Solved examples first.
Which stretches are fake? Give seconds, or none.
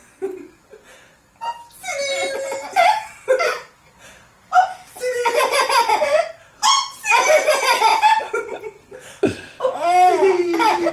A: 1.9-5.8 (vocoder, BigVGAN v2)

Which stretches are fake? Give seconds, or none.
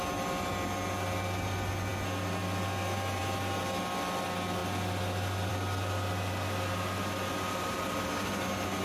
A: none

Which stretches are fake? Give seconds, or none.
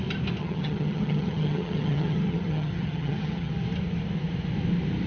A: 0.4-3.5 (vocoder, HiFi-GAN)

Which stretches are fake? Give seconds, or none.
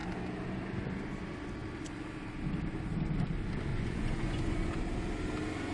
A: 3.7-4.8 (vocoder, Vocos)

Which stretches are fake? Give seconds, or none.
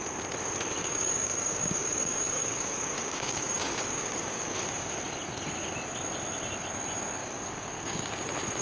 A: 0.8-4.9 (codec, DAC); 7.2-8.2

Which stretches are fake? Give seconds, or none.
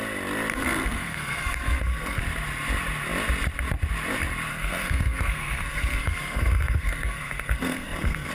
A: 0.5-2.2 (codec, SNAC); 4.5-8.3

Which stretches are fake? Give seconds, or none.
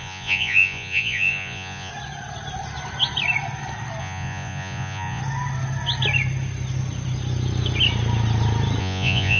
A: 0.0-1.9 (vocoder, Vocos); 4.0-5.2; 8.8-9.4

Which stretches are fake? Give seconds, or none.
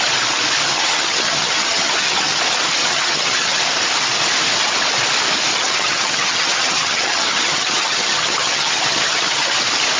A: 0.7-2.4 (vocoder, HiFi-GAN); 2.8-3.6; 5.5-9.6